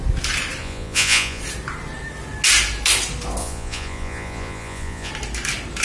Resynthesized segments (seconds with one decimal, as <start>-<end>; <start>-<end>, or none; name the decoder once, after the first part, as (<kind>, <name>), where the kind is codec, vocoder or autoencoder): 0.6-1.4 (vocoder, Vocos); 3.4-5.1